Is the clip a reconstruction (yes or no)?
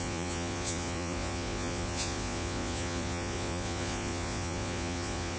yes